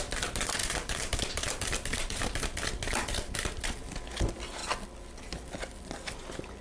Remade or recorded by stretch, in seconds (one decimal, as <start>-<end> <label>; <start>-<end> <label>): 0.0-0.6 recorded; 0.6-2.4 remade; 2.4-6.6 recorded